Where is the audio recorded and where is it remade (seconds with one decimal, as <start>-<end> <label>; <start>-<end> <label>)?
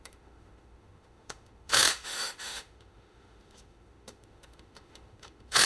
0.0-5.7 remade